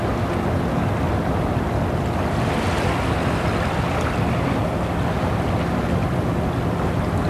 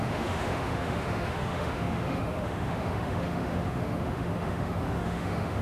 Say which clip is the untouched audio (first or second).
first